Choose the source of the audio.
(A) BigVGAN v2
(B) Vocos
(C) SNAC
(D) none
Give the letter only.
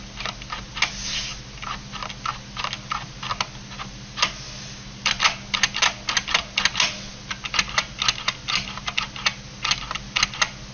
D